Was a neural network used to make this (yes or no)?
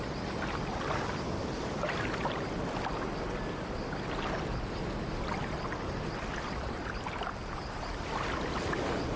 no